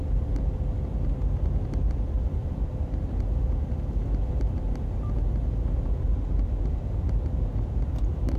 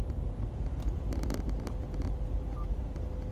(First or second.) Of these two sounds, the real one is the second